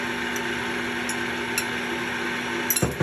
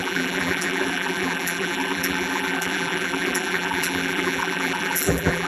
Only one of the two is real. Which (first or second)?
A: first